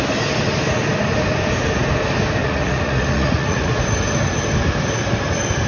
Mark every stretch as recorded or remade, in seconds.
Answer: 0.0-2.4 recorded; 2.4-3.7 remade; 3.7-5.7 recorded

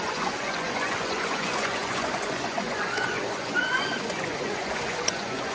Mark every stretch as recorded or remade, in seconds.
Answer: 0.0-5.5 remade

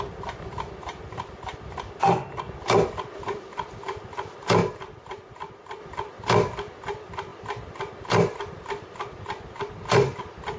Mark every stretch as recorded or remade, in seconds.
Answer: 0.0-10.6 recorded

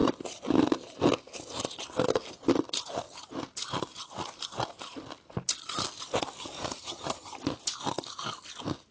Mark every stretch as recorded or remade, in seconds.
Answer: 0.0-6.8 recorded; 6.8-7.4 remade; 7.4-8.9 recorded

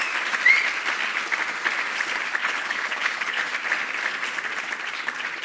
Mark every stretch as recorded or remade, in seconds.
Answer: 0.0-2.4 recorded; 2.4-3.4 remade; 3.4-5.4 recorded

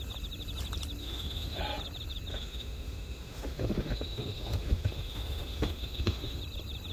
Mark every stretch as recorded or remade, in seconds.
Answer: 0.0-1.0 recorded; 1.0-1.6 remade; 1.6-2.3 recorded; 2.3-6.4 remade; 6.4-6.9 recorded